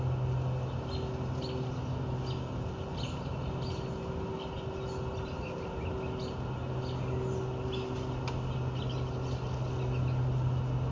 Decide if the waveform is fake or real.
real